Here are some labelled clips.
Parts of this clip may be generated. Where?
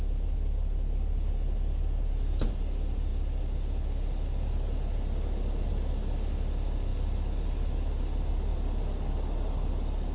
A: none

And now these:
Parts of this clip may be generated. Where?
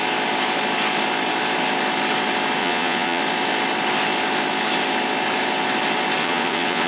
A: 2.6-3.2 (vocoder, Vocos); 6.2-6.9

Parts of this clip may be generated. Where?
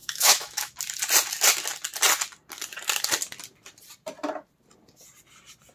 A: 0.0-0.8 (autoencoder, DAC-VAE)